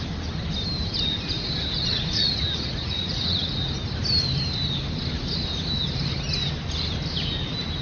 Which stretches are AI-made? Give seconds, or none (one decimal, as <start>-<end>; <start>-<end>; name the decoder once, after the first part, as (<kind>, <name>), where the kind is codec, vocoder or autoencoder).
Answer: 1.9-3.7 (vocoder, Vocos)